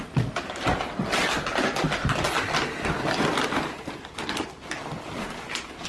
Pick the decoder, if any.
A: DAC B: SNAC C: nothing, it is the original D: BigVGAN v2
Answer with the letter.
C